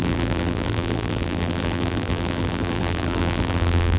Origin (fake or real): fake